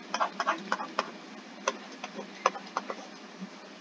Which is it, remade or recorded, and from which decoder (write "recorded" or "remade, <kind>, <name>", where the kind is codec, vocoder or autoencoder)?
recorded